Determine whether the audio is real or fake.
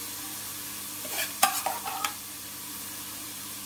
fake